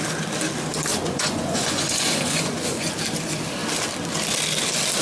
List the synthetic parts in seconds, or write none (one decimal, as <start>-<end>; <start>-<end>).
0.9-2.9